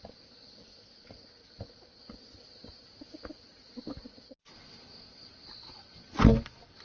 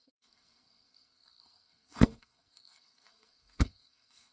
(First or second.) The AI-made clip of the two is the second